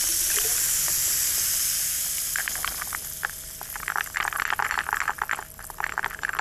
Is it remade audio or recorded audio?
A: recorded